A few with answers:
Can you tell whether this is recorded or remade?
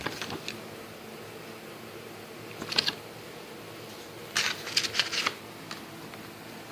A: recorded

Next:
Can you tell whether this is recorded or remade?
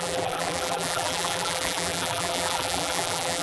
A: remade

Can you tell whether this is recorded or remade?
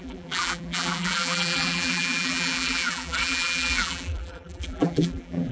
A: remade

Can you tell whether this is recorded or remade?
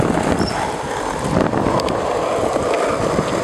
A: recorded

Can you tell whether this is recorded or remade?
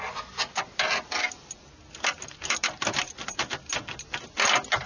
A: recorded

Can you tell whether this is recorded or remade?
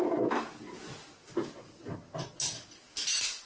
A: recorded